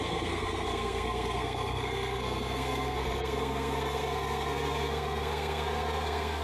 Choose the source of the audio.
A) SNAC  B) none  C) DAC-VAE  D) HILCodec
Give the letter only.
A